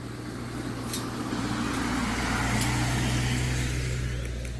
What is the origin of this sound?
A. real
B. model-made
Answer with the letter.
A